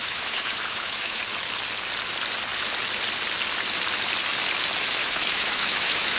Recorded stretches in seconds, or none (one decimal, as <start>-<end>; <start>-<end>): 1.2-5.0